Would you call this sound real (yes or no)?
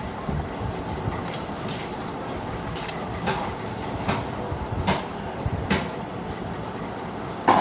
no